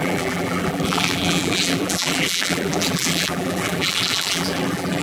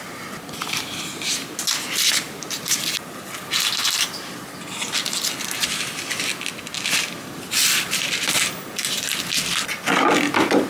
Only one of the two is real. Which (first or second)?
second